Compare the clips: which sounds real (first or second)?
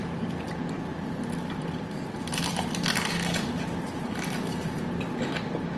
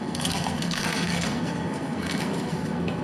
first